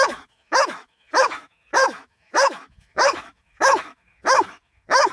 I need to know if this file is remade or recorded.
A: remade